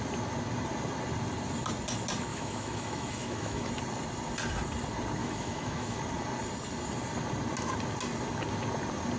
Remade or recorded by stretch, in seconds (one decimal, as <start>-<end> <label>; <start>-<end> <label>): 0.0-2.3 recorded; 2.3-3.7 remade; 3.7-5.2 recorded; 5.2-6.0 remade; 6.0-9.2 recorded